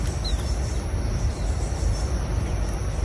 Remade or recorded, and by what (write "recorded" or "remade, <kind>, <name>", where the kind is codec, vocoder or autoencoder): recorded